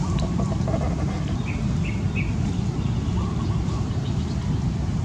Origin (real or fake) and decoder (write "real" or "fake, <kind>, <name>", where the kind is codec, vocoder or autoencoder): real